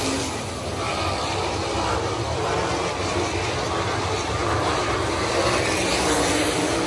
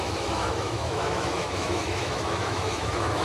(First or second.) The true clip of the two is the first